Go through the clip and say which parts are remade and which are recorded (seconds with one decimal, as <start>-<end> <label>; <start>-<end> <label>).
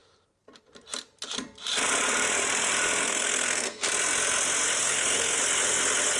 0.0-3.0 recorded; 3.0-3.8 remade; 3.8-4.8 recorded; 4.8-5.4 remade; 5.4-6.2 recorded